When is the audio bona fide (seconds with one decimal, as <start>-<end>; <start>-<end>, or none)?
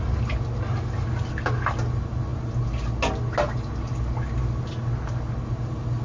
0.0-6.0